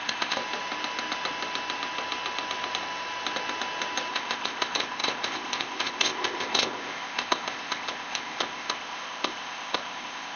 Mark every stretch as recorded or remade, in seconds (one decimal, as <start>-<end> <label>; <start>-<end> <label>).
0.0-0.4 remade; 0.4-4.1 recorded; 4.1-10.4 remade